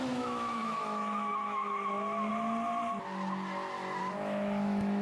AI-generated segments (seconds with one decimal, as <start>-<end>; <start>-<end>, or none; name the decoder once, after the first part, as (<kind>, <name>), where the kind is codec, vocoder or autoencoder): 0.0-2.3 (autoencoder, DAC-VAE); 4.0-5.0